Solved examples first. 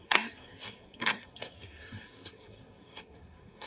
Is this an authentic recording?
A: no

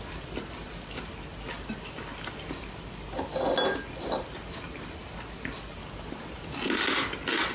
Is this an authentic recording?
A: yes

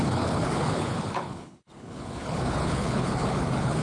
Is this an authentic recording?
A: no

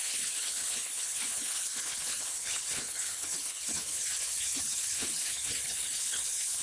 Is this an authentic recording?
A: no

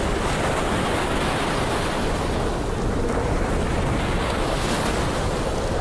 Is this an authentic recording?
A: yes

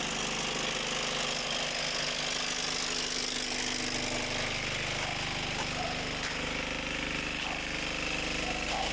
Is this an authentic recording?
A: yes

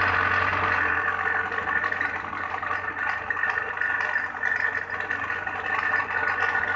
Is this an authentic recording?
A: yes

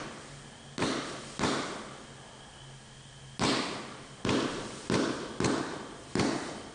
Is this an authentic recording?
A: yes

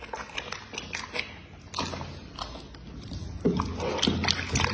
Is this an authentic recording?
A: yes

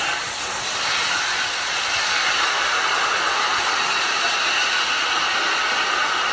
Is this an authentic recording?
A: yes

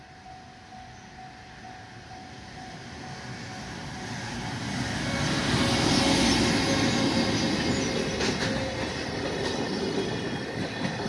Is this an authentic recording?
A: yes